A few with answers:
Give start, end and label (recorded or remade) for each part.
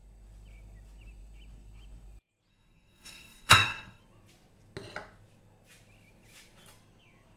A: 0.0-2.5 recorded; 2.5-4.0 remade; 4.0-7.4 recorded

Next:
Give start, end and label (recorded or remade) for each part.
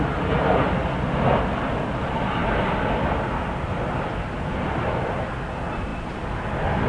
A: 0.0-6.9 recorded